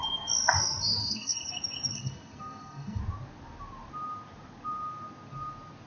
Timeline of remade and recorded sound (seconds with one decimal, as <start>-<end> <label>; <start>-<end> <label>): 0.0-1.0 recorded; 1.0-1.5 remade; 1.5-1.9 recorded; 1.9-3.0 remade; 3.0-5.9 recorded